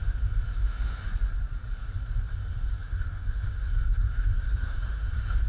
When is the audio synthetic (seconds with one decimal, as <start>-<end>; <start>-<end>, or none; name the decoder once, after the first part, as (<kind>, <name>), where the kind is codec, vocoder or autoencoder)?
0.0-1.1 (autoencoder, DAC-VAE); 2.3-5.5